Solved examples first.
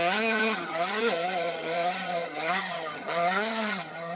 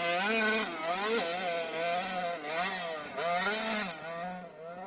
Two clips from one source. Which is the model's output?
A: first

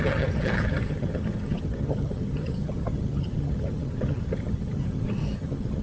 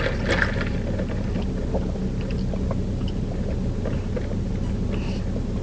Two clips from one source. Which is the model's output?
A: first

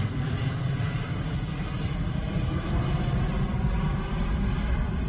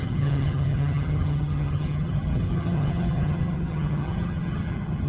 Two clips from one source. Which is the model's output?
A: second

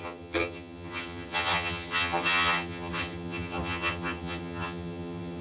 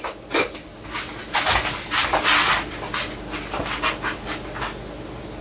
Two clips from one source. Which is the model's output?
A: first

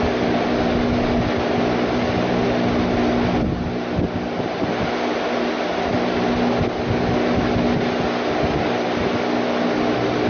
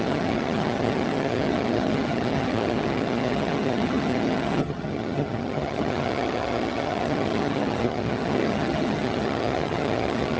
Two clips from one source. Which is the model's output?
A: second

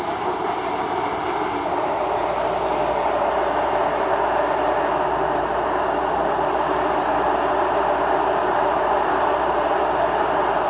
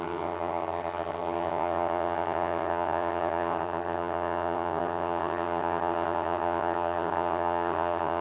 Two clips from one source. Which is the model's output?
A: second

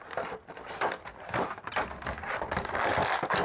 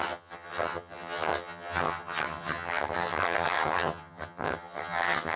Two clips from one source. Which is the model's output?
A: second